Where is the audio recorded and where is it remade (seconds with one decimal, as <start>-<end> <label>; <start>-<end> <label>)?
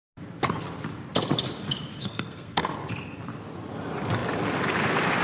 0.0-2.0 recorded; 2.0-2.7 remade; 2.7-5.2 recorded